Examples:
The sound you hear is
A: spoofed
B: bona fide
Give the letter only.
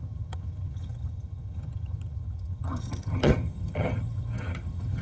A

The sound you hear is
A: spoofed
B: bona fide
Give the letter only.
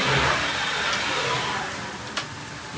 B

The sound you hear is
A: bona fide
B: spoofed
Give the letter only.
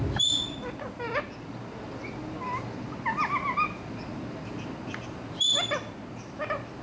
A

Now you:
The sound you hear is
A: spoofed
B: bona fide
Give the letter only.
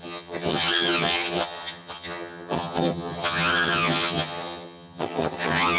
A